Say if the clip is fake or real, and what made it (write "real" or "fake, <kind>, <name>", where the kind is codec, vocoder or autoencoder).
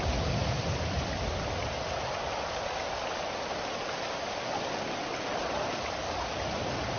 real